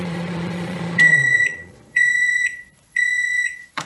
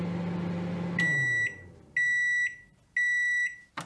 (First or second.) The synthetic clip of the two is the first